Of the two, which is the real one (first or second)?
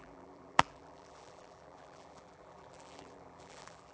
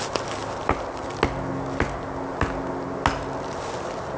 second